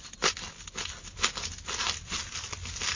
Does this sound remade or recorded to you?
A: recorded